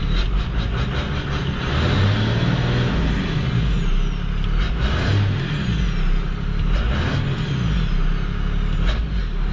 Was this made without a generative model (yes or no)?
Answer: yes